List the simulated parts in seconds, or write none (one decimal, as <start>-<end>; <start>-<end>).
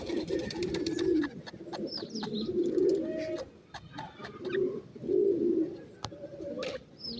none